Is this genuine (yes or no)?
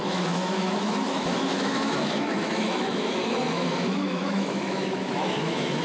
no